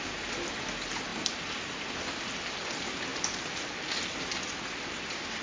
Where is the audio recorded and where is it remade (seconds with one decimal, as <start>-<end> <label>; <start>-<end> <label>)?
0.0-5.4 recorded